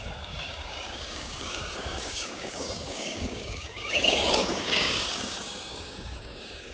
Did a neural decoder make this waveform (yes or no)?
yes